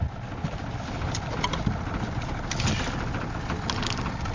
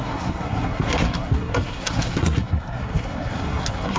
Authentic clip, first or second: first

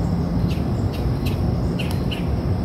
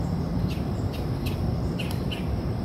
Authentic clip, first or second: first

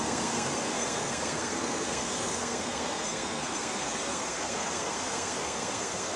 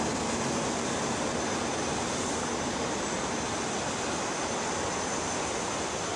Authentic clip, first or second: second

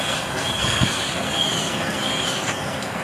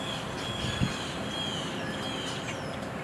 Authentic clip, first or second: second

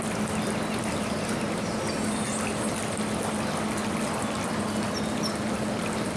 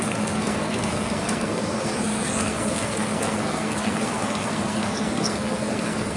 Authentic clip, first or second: first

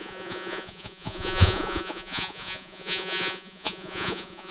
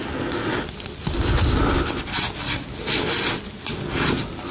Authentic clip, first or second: second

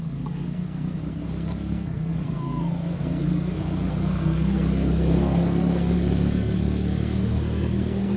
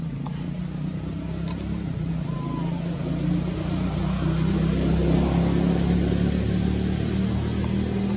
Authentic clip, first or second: second